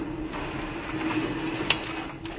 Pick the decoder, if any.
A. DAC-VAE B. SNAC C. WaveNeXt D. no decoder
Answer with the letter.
D